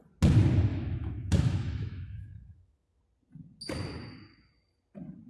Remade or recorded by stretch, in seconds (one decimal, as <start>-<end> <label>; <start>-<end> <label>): 0.0-0.7 recorded; 0.7-3.0 remade; 3.0-5.3 recorded